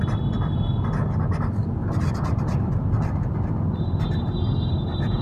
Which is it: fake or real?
real